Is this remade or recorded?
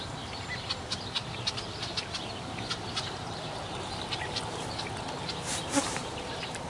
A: remade